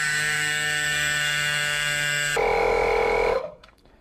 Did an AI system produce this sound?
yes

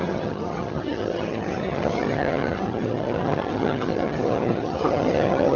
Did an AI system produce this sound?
yes